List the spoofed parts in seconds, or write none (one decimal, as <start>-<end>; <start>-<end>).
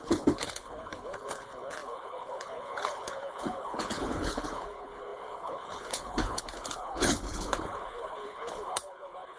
0.0-9.4